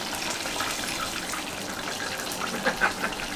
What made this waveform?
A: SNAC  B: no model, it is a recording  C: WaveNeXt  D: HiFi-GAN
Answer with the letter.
B